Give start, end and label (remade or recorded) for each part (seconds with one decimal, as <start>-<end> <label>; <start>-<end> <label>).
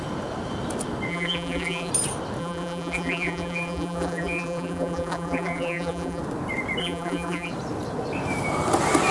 0.0-1.1 recorded; 1.1-1.9 remade; 1.9-2.4 recorded; 2.4-6.2 remade; 6.2-6.8 recorded; 6.8-7.5 remade; 7.5-9.1 recorded